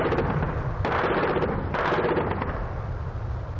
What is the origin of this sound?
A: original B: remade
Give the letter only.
A